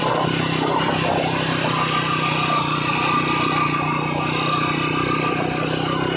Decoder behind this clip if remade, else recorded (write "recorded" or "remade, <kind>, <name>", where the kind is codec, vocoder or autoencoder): recorded